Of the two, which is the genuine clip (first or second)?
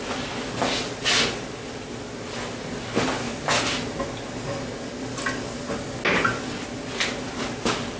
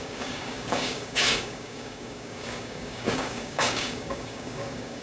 first